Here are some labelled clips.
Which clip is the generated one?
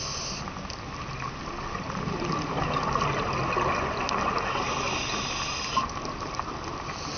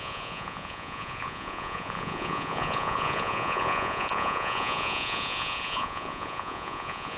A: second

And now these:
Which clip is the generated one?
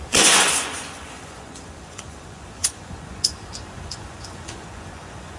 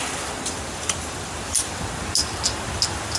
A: first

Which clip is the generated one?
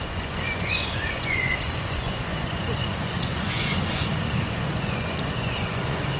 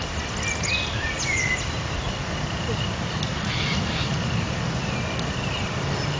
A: first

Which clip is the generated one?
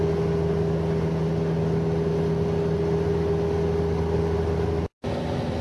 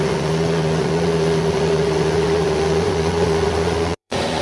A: second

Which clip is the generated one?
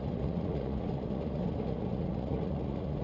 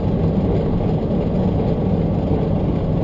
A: first